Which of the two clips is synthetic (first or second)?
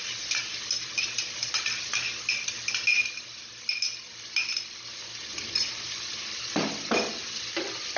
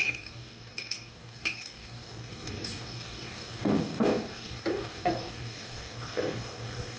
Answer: second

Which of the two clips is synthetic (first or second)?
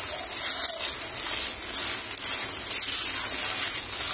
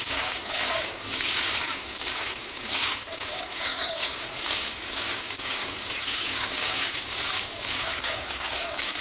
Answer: second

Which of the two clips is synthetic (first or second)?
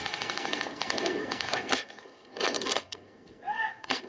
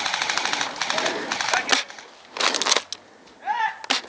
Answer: first